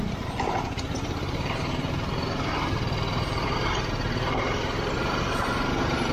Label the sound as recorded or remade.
remade